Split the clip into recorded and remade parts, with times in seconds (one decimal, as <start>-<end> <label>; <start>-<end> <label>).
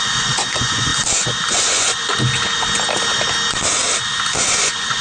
0.0-0.9 remade; 0.9-1.5 recorded; 1.5-2.1 remade; 2.1-4.5 recorded; 4.5-5.0 remade